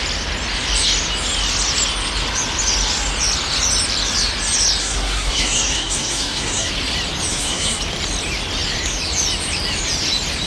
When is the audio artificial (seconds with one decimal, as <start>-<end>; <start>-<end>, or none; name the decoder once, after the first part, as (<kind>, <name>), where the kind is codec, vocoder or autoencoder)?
4.8-6.7 (codec, SNAC); 7.3-7.8